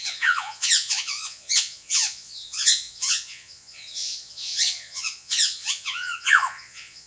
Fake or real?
fake